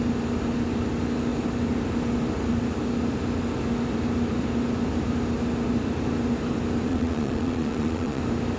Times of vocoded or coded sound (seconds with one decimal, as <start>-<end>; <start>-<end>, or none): 6.9-8.2